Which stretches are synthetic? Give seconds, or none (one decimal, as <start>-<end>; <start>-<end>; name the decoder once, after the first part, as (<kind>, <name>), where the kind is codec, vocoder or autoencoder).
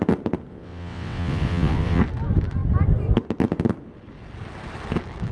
0.5-2.0 (vocoder, WaveNeXt)